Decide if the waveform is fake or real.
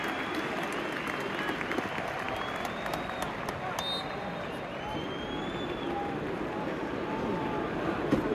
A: real